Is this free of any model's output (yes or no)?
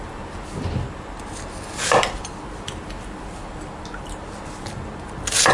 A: yes